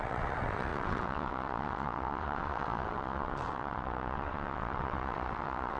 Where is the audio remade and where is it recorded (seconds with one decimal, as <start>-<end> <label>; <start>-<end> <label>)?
0.0-5.8 remade